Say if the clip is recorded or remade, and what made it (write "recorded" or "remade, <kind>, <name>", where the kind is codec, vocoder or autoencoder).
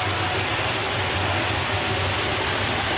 recorded